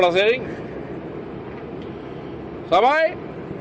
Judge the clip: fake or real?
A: real